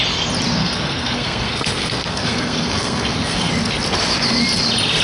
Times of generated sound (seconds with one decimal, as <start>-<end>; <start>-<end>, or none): 0.6-3.5